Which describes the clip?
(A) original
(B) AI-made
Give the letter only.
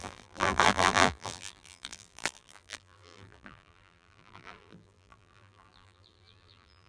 B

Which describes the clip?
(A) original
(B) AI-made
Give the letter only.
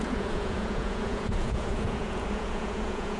B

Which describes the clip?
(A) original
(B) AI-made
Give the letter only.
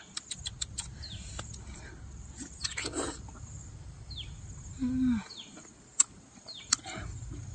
A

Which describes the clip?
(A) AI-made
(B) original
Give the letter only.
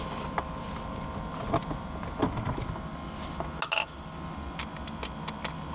B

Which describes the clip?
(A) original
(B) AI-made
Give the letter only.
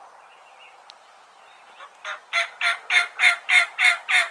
A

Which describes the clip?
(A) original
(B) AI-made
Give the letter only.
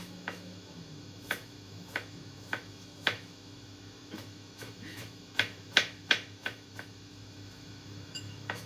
B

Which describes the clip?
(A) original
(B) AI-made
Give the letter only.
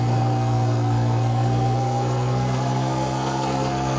B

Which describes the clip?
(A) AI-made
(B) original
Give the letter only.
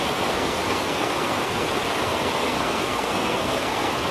A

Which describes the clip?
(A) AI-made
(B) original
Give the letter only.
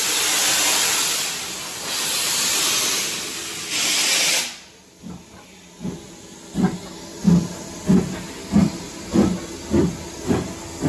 B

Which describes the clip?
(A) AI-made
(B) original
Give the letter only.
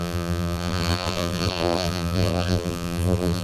A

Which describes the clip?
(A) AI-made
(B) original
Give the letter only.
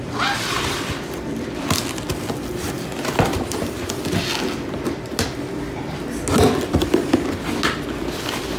B